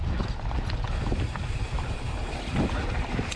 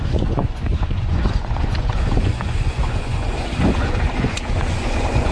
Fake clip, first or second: second